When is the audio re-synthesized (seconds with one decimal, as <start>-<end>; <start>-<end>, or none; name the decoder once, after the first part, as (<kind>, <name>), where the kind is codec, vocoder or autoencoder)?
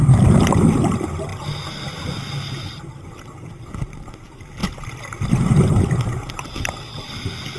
4.6-5.6 (vocoder, BigVGAN v2)